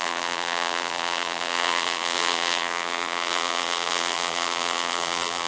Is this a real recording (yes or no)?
no